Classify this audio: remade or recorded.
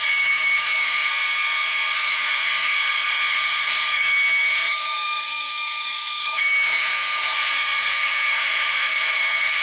remade